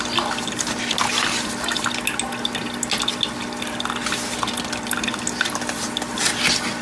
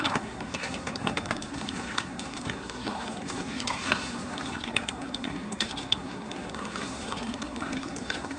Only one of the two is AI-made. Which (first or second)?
second